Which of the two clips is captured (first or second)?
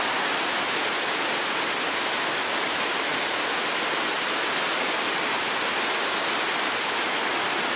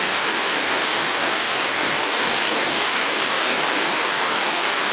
first